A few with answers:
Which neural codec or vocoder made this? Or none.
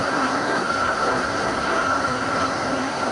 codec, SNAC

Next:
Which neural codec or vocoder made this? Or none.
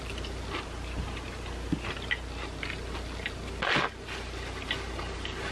none